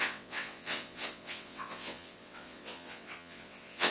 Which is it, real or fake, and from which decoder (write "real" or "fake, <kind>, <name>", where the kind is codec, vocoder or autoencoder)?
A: fake, vocoder, WaveNeXt